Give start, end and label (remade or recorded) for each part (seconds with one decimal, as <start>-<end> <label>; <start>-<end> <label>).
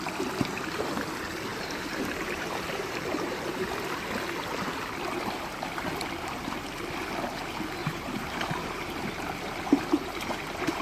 0.0-1.5 recorded; 1.5-3.5 remade; 3.5-7.8 recorded; 7.8-9.0 remade; 9.0-10.8 recorded